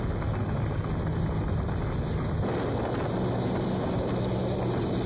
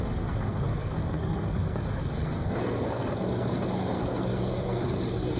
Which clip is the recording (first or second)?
first